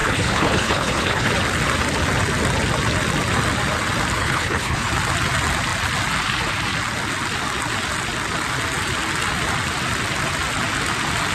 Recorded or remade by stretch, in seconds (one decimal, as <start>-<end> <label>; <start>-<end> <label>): 0.0-1.3 remade; 1.3-4.2 recorded; 4.2-4.9 remade; 4.9-11.3 recorded